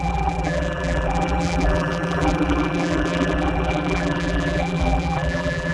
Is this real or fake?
fake